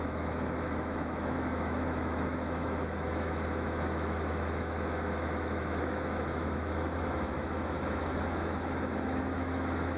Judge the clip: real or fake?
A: fake